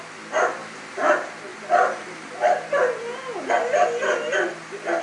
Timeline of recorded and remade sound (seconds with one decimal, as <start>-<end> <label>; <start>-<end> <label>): 0.0-5.0 recorded